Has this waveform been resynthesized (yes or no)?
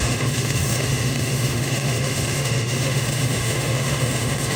yes